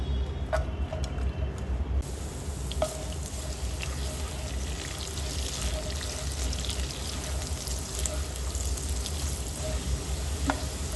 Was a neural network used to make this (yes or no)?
no